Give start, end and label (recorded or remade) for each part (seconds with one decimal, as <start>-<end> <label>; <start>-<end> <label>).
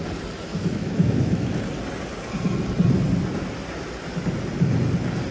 0.0-0.5 recorded; 0.5-1.6 remade; 1.6-5.3 recorded